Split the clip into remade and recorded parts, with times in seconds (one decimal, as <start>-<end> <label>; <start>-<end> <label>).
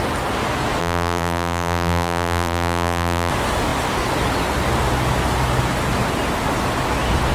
0.0-0.8 recorded; 0.8-3.3 remade; 3.3-7.3 recorded